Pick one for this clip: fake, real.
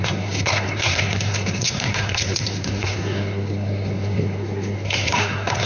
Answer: fake